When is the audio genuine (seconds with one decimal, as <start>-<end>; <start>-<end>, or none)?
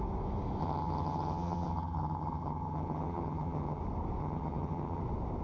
0.0-0.6; 3.8-4.2; 5.0-5.4